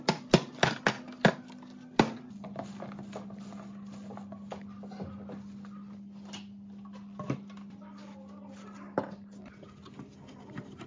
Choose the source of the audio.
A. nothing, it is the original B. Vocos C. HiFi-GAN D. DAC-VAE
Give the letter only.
A